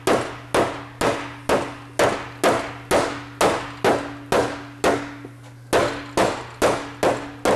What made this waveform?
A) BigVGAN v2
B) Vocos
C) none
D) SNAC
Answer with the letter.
C